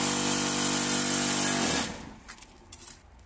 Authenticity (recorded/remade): recorded